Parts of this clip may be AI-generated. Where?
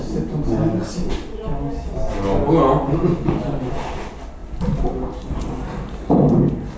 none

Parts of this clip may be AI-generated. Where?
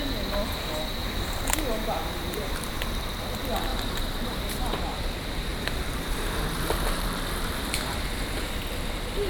1.0-2.7; 3.7-5.0; 5.5-8.6